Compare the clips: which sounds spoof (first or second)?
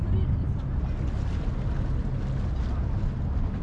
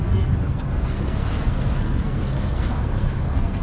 second